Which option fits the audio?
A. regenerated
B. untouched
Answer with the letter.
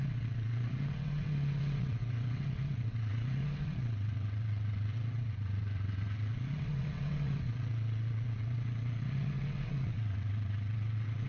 A